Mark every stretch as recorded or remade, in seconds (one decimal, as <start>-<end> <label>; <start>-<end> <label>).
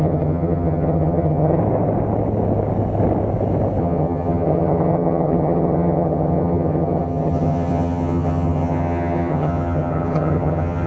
0.0-1.6 remade; 1.6-3.8 recorded; 3.8-10.9 remade